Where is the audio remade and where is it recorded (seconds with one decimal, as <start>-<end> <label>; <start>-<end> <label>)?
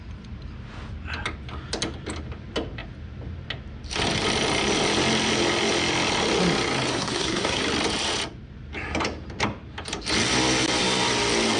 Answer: 0.0-6.9 recorded; 6.9-7.6 remade; 7.6-11.6 recorded